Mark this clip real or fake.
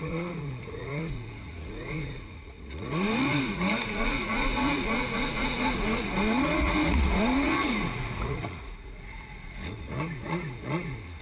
fake